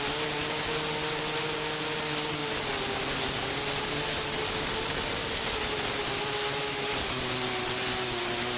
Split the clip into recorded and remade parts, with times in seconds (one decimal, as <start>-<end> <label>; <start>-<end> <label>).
0.0-8.6 recorded